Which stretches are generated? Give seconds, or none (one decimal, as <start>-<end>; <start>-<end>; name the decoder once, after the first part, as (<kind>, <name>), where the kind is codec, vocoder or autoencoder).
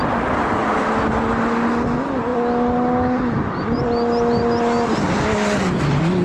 none